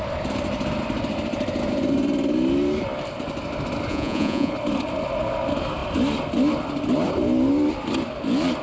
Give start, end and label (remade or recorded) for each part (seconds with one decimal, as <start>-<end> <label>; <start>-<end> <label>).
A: 0.0-3.9 recorded; 3.9-4.5 remade; 4.5-8.6 recorded